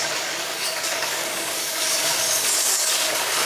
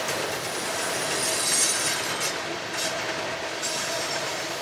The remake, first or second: first